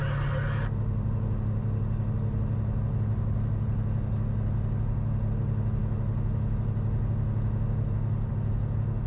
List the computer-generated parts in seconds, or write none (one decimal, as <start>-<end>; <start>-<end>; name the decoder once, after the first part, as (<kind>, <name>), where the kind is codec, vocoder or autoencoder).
none